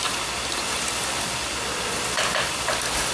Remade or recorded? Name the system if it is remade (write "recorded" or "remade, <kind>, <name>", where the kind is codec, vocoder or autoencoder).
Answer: recorded